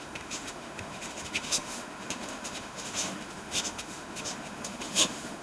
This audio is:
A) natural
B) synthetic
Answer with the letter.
B